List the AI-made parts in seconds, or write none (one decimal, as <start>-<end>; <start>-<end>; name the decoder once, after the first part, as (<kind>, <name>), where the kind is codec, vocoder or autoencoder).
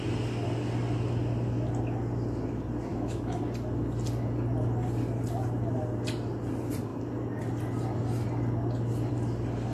2.9-3.4 (autoencoder, DAC-VAE)